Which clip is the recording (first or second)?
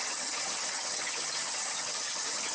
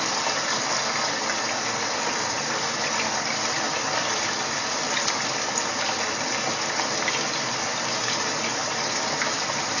second